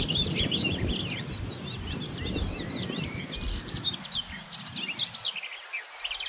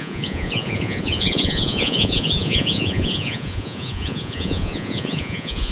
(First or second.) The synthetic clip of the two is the second